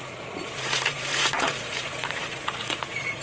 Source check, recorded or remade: remade